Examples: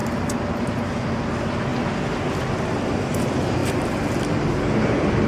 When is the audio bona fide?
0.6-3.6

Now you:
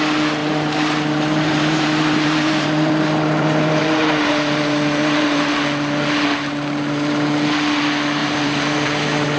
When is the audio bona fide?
0.0-0.4; 5.5-8.2

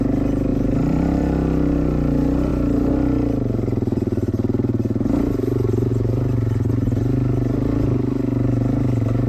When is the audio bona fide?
0.0-0.5; 1.2-9.3

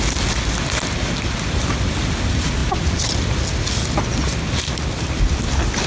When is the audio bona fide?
0.0-5.9

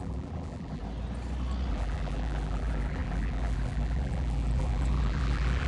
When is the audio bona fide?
0.8-1.7